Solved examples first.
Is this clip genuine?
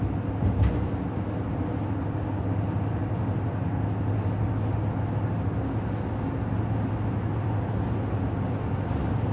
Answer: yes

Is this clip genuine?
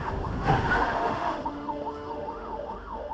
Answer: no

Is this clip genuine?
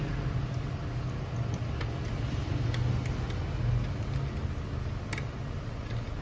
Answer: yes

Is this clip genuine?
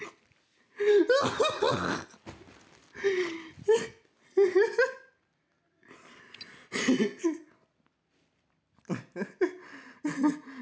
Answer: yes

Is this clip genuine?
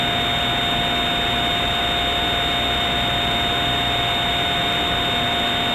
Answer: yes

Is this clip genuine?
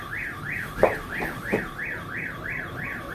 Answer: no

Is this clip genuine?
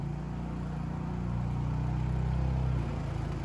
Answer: yes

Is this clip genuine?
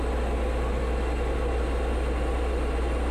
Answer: yes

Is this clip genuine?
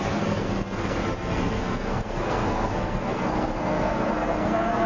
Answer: no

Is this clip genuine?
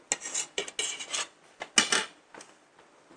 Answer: yes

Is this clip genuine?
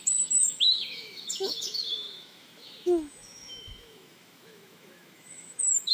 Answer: no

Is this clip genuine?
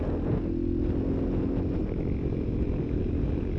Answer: yes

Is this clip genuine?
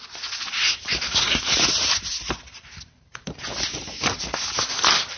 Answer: yes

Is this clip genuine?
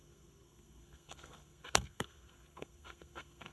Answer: no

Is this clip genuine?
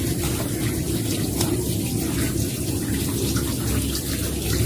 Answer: yes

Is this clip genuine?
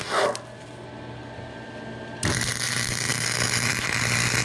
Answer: yes